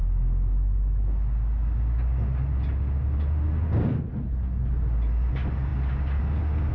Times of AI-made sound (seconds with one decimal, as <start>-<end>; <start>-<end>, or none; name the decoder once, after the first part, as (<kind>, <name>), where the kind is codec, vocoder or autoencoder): none